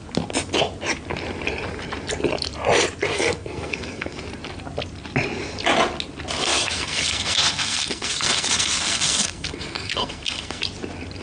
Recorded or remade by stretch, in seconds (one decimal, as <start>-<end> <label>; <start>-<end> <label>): 0.0-3.1 recorded; 3.1-4.2 remade; 4.2-6.4 recorded; 6.4-10.6 remade; 10.6-11.2 recorded